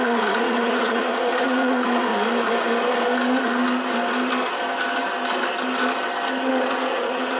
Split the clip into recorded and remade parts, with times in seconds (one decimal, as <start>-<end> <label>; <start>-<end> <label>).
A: 0.0-2.1 remade; 2.1-6.5 recorded; 6.5-7.4 remade